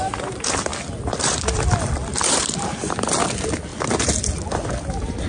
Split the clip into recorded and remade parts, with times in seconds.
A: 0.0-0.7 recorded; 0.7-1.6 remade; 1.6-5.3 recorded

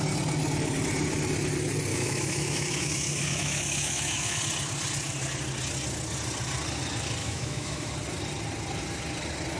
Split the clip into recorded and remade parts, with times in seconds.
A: 0.0-1.9 recorded; 1.9-4.4 remade; 4.4-7.2 recorded; 7.2-7.9 remade; 7.9-9.6 recorded

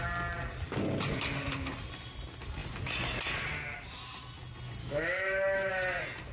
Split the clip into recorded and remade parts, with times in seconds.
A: 0.0-4.8 recorded; 4.8-5.7 remade; 5.7-6.3 recorded

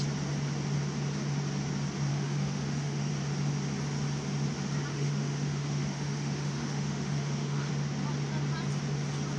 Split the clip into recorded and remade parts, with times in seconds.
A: 0.0-2.1 recorded; 2.1-3.1 remade; 3.1-4.9 recorded; 4.9-7.7 remade; 7.7-9.4 recorded